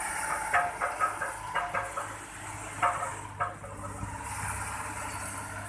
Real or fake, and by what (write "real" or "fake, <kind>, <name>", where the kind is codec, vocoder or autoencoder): real